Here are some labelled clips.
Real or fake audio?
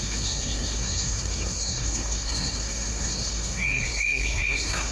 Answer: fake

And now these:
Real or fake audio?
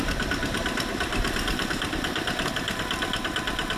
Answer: real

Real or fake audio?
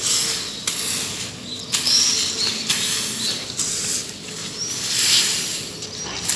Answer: real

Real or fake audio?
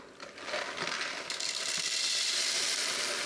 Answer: real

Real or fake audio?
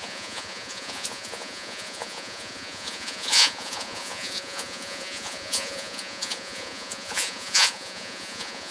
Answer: fake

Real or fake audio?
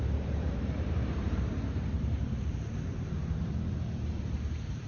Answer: fake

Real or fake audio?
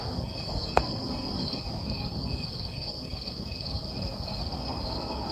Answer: fake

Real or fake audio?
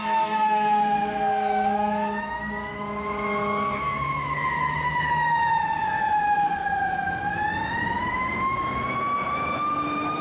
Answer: fake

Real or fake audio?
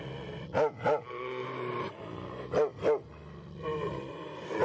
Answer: real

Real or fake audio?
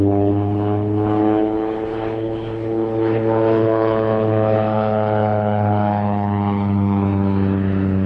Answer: fake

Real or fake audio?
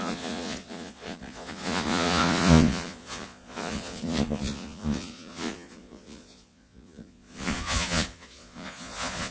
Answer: fake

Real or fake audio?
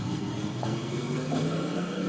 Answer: fake